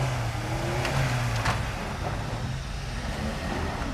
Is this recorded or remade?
recorded